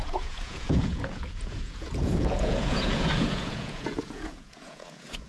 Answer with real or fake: fake